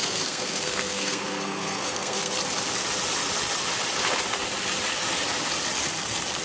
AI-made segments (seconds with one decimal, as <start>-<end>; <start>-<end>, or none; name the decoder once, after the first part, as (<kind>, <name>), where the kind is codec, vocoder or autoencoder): 0.0-2.3 (codec, SNAC)